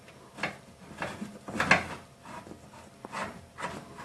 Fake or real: real